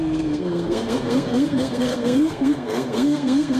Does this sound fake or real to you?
fake